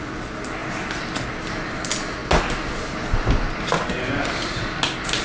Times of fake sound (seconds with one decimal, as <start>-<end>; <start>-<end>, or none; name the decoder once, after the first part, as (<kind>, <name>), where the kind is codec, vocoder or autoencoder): none